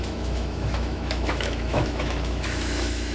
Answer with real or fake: fake